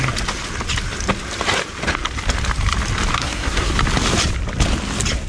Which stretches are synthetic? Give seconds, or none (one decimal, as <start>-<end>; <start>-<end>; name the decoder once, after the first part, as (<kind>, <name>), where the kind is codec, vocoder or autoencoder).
3.1-3.7 (codec, SNAC)